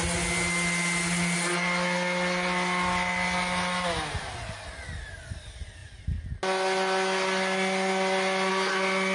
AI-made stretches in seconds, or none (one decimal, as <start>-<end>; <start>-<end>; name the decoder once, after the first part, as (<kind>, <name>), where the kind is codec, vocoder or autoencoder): none